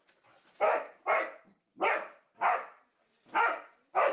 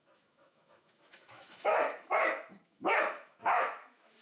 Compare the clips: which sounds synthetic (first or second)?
second